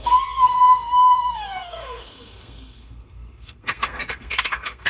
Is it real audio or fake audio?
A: fake